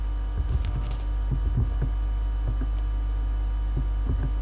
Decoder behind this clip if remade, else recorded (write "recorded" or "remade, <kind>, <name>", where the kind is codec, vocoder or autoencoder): recorded